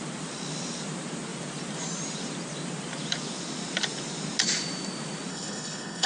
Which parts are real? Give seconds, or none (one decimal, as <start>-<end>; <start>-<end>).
0.0-5.3